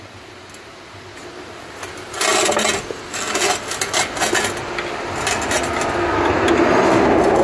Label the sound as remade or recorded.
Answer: recorded